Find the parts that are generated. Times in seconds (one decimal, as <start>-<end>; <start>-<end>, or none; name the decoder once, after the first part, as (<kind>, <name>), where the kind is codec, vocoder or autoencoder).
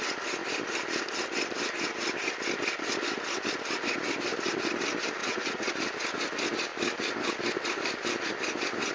5.2-5.7 (vocoder, Vocos)